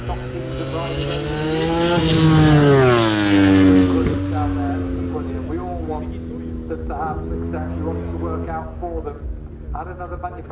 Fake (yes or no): no